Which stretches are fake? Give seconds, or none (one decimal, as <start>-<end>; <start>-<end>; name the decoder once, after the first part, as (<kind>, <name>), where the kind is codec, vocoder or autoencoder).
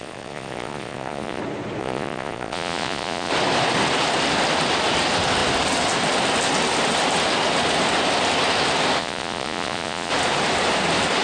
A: 0.0-1.4 (vocoder, Vocos); 1.8-3.3; 9.0-10.1